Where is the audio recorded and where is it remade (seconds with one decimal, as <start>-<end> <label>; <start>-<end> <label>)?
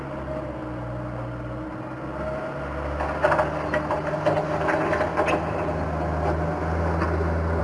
0.0-7.6 recorded